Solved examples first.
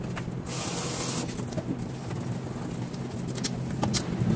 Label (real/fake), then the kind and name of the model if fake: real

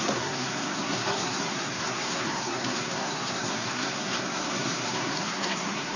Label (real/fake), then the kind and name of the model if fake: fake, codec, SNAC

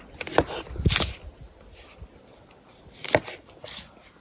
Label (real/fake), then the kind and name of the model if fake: real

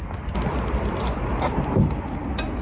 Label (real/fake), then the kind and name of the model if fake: real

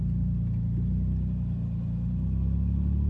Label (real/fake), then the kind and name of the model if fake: real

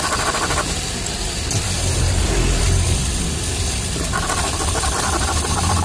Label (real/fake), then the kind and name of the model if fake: real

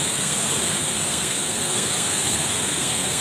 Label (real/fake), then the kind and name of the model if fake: fake, codec, SNAC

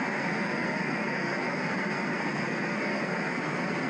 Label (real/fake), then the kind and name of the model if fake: fake, codec, SNAC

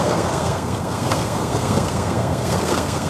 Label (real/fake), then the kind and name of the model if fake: fake, codec, SNAC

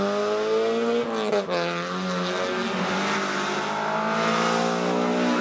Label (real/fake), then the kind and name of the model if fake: real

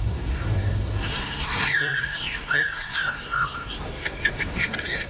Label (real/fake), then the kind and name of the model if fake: fake, codec, SNAC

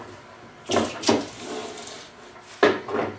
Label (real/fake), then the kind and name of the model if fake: real